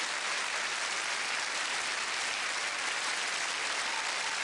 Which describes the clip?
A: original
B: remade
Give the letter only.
A